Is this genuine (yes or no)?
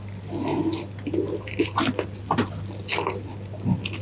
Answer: yes